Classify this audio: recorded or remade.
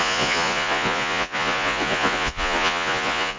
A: remade